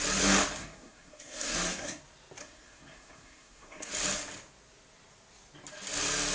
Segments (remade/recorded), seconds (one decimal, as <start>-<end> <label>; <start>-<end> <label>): 0.0-0.6 recorded; 0.6-2.0 remade; 2.0-2.4 recorded; 2.4-3.9 remade; 3.9-6.3 recorded